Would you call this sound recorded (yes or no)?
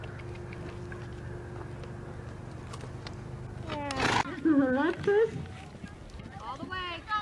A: yes